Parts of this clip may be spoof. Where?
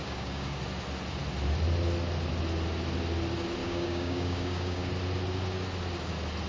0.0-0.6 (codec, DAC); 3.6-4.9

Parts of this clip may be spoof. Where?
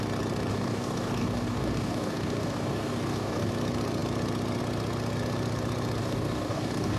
0.5-3.5 (codec, DAC); 6.0-7.0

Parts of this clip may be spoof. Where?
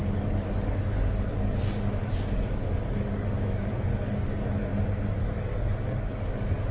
0.0-4.7 (codec, DAC); 5.2-6.7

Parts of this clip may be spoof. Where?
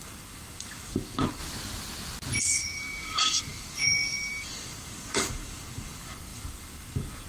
0.0-1.4 (codec, DAC); 2.4-7.3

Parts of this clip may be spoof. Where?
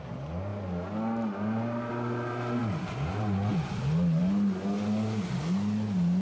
none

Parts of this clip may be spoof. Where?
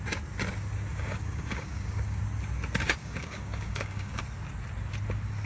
0.9-2.2 (codec, DAC); 3.0-4.2